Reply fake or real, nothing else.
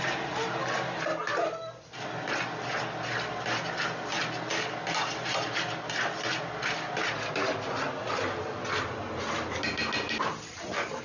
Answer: real